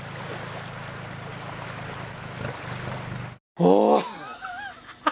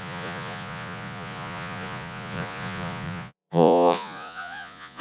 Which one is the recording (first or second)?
first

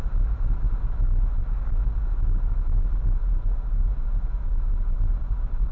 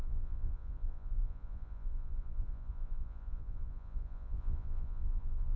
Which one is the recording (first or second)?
first